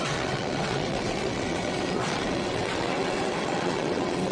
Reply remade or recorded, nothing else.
remade